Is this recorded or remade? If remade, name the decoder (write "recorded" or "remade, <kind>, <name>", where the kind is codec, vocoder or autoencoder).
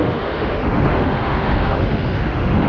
remade, autoencoder, DAC-VAE